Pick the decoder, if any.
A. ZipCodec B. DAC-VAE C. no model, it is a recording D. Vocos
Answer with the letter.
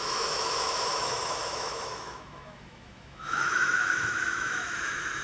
B